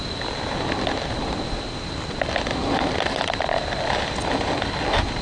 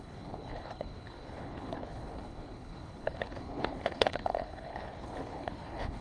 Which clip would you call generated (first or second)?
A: second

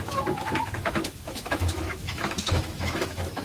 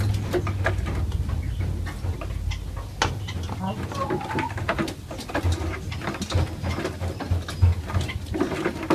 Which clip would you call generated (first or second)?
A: first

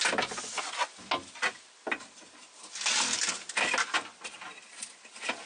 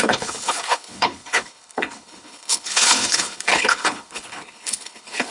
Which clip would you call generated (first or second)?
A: second